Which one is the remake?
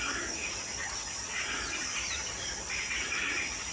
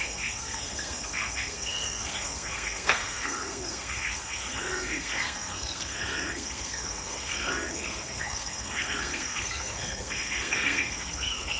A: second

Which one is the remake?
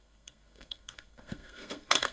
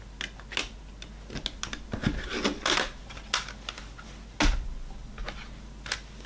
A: first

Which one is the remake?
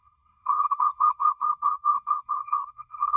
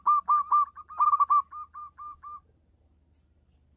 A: first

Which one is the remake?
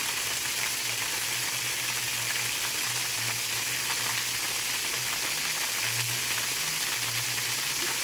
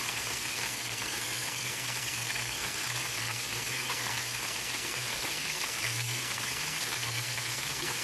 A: second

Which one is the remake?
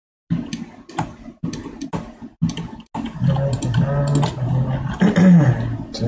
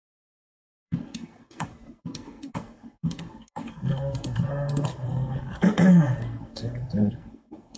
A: second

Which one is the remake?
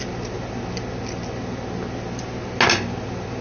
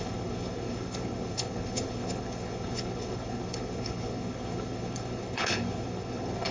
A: second